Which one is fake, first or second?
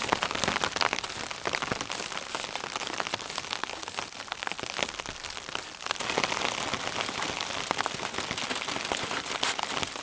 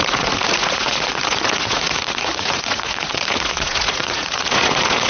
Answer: second